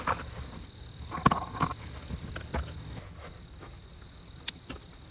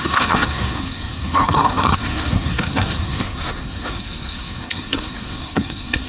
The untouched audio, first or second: first